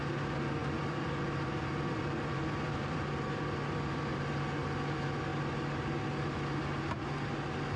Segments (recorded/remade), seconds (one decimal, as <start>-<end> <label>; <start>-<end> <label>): 0.0-0.6 recorded; 0.6-3.1 remade; 3.1-7.8 recorded